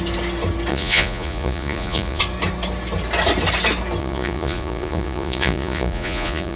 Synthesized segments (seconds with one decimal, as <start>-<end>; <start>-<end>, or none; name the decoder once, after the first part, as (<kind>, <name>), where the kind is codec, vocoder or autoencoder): 0.7-2.2 (vocoder, Vocos); 4.0-6.6